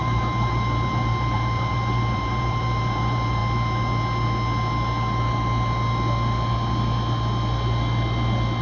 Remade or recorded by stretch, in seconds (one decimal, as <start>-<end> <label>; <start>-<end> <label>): 0.0-3.4 remade; 3.4-8.6 recorded